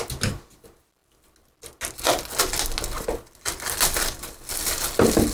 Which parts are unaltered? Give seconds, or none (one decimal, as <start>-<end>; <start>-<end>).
0.0-5.3